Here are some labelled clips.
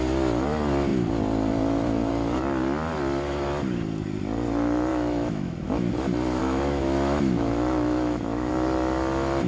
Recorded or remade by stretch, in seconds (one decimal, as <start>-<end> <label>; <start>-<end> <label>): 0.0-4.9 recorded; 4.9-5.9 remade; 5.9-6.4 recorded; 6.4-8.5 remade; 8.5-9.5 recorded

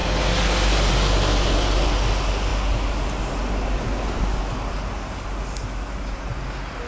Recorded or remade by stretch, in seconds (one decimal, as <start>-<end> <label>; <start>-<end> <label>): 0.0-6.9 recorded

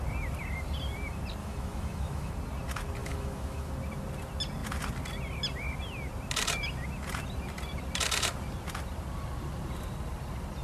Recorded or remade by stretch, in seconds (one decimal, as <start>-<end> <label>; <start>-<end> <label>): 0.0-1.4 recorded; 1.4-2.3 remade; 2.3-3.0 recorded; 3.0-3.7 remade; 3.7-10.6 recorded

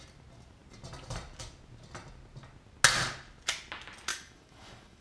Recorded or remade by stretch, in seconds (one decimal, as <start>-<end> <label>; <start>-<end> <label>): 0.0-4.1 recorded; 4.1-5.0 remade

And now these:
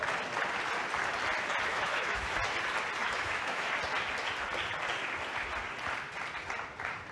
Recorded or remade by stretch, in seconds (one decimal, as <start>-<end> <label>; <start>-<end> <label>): 0.0-1.7 recorded; 1.7-2.3 remade; 2.3-3.0 recorded; 3.0-3.7 remade; 3.7-7.1 recorded